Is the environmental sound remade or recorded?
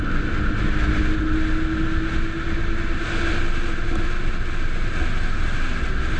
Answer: recorded